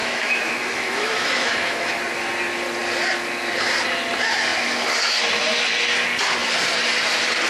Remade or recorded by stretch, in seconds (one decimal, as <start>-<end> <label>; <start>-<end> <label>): 0.0-2.0 remade; 2.0-7.5 recorded